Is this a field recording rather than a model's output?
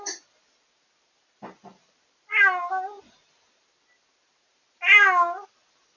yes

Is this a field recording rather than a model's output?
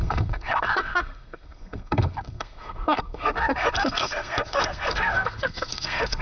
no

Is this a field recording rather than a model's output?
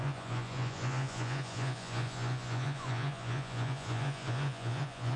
no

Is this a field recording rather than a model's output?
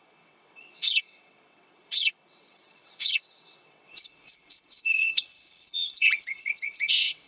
no